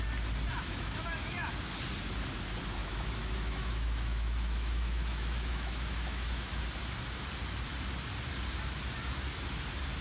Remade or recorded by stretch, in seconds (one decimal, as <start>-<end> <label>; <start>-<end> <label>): 0.0-0.5 recorded; 0.5-1.5 remade; 1.5-2.8 recorded; 2.8-6.6 remade; 6.6-10.0 recorded